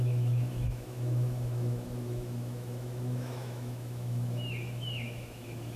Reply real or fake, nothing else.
fake